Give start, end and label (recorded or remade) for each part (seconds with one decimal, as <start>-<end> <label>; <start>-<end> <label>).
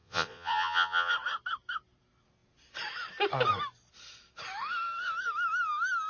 0.0-1.1 remade; 1.1-6.1 recorded